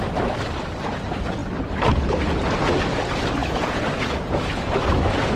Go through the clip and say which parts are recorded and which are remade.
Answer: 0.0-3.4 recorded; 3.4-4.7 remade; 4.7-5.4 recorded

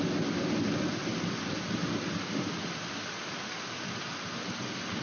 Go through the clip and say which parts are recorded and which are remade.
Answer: 0.0-5.0 recorded

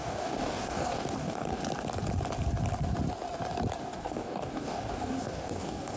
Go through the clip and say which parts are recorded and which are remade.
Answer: 0.0-1.6 remade; 1.6-3.8 recorded; 3.8-6.0 remade

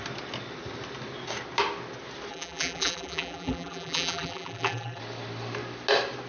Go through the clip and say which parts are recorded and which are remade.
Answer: 0.0-2.3 recorded; 2.3-5.0 remade; 5.0-6.3 recorded

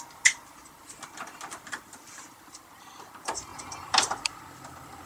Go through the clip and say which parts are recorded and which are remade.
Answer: 0.0-3.5 recorded; 3.5-4.4 remade; 4.4-5.1 recorded